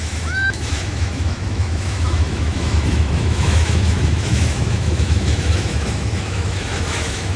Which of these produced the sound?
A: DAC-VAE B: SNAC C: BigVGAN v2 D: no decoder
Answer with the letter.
A